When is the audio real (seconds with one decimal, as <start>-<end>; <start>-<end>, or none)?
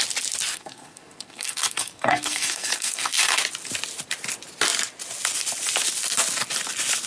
0.0-0.5; 3.4-7.1